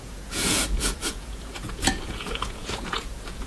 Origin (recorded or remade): remade